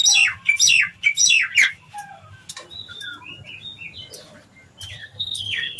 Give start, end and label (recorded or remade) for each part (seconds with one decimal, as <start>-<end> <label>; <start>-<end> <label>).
0.0-5.0 recorded; 5.0-5.8 remade